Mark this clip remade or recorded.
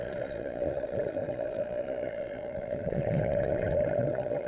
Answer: remade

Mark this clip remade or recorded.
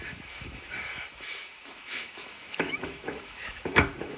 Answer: remade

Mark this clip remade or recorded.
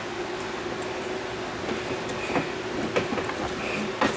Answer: recorded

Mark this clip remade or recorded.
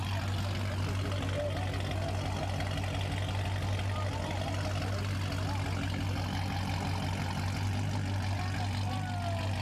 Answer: recorded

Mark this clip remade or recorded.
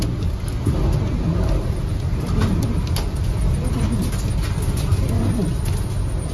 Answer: recorded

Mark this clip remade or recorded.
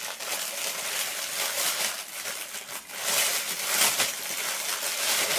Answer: recorded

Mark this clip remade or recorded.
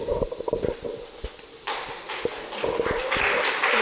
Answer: recorded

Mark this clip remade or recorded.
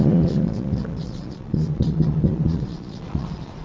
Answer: remade